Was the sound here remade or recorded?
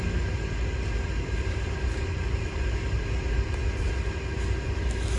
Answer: recorded